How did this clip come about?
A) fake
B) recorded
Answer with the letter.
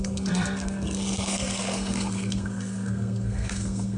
A